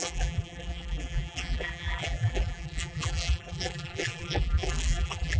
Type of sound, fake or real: fake